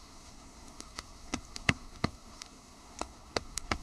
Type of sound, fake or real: fake